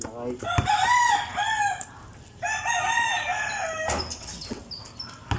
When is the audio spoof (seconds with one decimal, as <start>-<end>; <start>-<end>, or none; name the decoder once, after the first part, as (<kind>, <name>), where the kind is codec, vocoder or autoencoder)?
4.1-4.6 (vocoder, WaveNeXt)